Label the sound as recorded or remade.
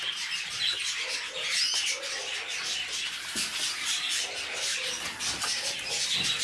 recorded